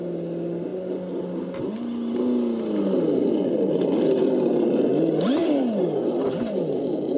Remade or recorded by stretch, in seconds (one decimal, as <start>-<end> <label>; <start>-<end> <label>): 0.0-7.2 recorded

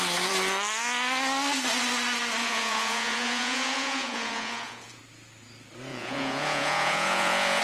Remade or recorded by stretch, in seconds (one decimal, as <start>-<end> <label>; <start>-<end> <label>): 0.0-2.4 recorded; 2.4-5.0 remade; 5.0-5.9 recorded; 5.9-7.6 remade

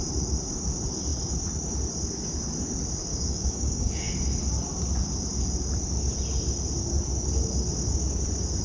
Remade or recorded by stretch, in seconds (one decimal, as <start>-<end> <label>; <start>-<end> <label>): 0.0-3.1 recorded; 3.1-4.1 remade; 4.1-8.6 recorded

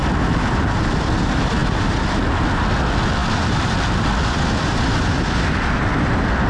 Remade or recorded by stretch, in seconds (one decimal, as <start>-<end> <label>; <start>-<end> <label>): 0.0-6.5 recorded

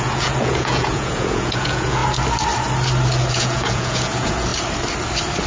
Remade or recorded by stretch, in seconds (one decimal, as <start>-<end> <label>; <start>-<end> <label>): 0.0-2.0 remade; 2.0-3.3 recorded; 3.3-4.5 remade; 4.5-5.5 recorded

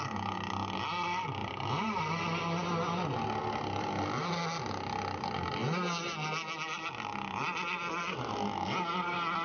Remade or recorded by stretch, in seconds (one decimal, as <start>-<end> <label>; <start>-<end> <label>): 0.0-1.4 recorded; 1.4-2.0 remade; 2.0-9.4 recorded

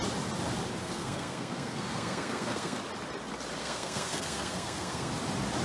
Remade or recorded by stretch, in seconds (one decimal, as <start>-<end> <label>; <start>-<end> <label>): 0.0-0.8 recorded; 0.8-2.8 remade; 2.8-3.6 recorded; 3.6-5.1 remade; 5.1-5.6 recorded

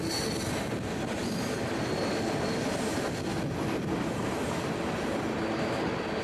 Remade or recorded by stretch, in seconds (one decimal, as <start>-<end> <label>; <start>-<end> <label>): 0.0-6.2 recorded